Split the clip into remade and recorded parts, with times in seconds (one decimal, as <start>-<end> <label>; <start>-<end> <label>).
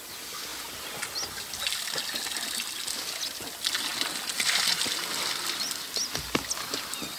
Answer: 0.0-7.2 recorded